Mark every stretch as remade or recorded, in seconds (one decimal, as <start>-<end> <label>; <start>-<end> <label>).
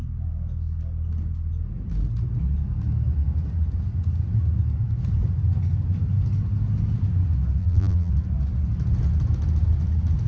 0.0-7.6 recorded; 7.6-8.1 remade; 8.1-10.3 recorded